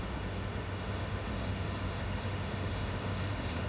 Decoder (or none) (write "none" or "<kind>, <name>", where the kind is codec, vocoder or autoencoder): autoencoder, DAC-VAE